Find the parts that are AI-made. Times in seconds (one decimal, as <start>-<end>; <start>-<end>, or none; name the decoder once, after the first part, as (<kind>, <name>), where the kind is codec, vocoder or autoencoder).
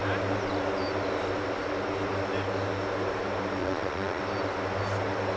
3.6-4.2 (vocoder, Vocos)